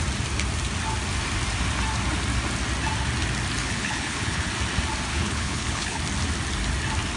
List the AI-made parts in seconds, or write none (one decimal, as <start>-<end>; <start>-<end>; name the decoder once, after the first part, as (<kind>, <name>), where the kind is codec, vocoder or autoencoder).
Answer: 3.6-4.5 (codec, HILCodec); 5.1-6.0